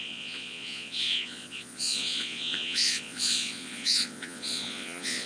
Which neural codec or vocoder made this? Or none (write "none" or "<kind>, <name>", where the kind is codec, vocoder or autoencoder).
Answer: vocoder, Vocos